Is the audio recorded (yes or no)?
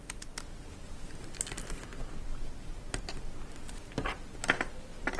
yes